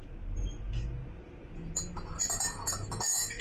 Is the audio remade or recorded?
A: recorded